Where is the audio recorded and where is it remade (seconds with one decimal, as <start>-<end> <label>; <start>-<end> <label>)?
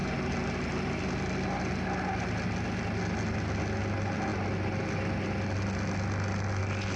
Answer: 0.0-7.0 recorded